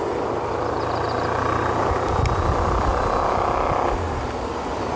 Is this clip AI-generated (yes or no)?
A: no